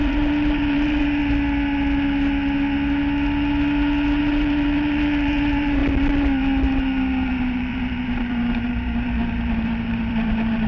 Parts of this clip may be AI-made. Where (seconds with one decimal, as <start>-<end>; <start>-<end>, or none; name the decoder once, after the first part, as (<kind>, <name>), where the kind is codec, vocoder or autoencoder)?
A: 0.0-1.2 (vocoder, BigVGAN v2); 4.2-5.8; 7.3-10.7